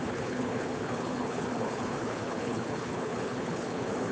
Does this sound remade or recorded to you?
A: remade